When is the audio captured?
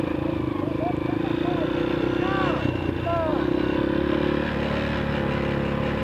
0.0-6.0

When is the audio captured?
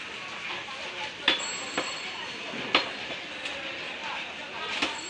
0.0-5.1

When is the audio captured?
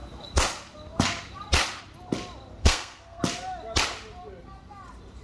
0.0-2.6; 3.2-5.2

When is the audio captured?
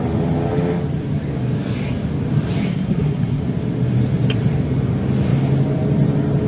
0.0-2.7; 3.4-6.5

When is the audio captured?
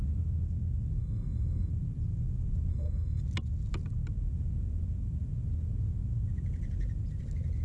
0.0-1.0; 1.7-2.7; 3.2-7.6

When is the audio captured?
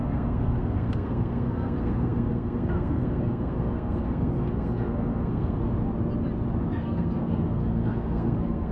5.6-6.7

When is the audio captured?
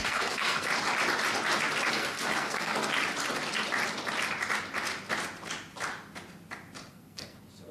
0.7-1.9; 2.9-6.9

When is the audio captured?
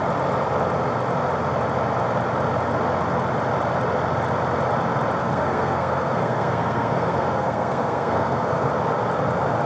0.0-5.2; 8.7-9.7